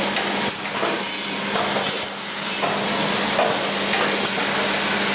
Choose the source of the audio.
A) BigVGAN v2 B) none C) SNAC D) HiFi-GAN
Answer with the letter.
B